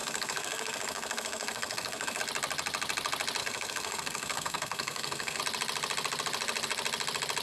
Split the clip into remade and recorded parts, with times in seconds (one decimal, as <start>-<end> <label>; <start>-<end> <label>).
0.0-2.2 remade; 2.2-3.4 recorded; 3.4-5.4 remade; 5.4-7.4 recorded